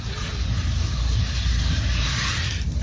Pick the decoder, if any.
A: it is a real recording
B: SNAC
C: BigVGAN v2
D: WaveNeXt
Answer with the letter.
A